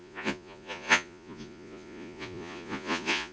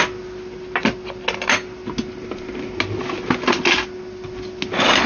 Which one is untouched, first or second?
second